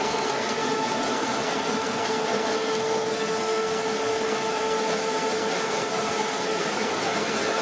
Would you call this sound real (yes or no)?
no